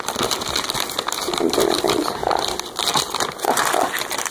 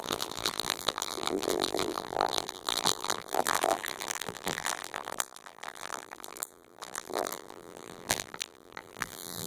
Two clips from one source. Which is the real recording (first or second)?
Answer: first